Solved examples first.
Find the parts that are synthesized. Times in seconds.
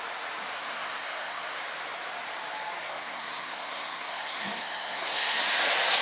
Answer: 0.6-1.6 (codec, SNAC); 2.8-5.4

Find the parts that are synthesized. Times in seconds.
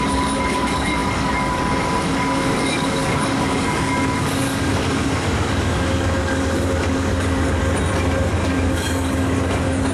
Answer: 0.0-7.6 (codec, DAC); 8.3-9.9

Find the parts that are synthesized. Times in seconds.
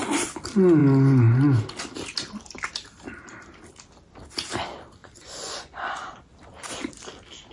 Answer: 5.0-6.1 (vocoder, Vocos)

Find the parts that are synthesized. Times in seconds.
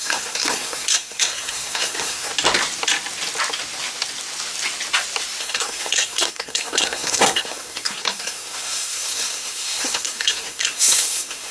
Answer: 0.0-2.3 (codec, SNAC); 5.4-11.5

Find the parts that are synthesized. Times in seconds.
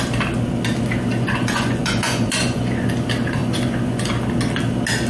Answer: 1.1-2.9 (vocoder, Vocos); 3.4-4.1